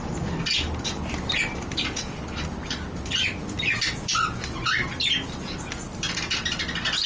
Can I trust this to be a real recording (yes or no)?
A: yes